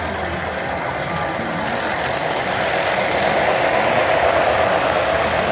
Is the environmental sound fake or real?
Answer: real